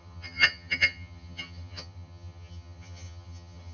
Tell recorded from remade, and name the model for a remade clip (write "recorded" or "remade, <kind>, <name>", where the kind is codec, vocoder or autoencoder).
remade, vocoder, HiFi-GAN